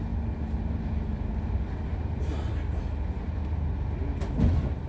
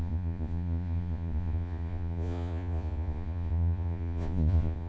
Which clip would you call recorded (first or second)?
first